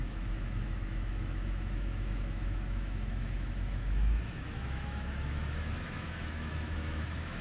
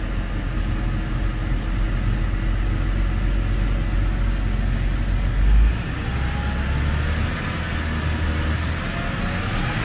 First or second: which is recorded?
second